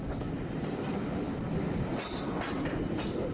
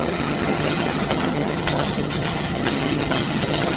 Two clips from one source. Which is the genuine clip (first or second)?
first